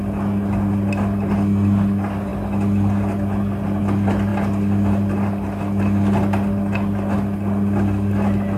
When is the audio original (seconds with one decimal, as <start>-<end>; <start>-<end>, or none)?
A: 0.0-8.6